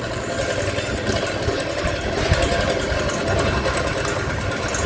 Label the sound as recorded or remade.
recorded